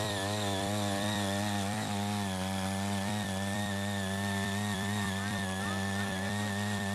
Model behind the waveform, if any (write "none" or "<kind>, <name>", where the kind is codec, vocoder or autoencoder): vocoder, BigVGAN v2